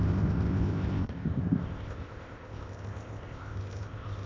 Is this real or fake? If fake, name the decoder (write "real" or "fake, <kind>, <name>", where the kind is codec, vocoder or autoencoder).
fake, codec, ZipCodec